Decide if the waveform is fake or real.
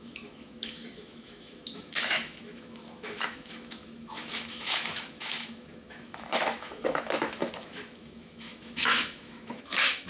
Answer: fake